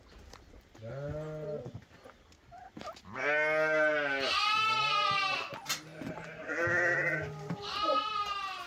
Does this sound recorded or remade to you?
recorded